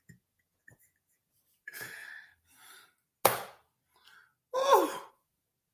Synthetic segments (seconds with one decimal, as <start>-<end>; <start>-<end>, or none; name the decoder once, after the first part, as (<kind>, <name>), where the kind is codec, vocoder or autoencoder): 0.0-2.0 (vocoder, Vocos); 5.1-5.7